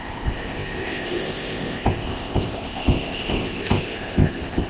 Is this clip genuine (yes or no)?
no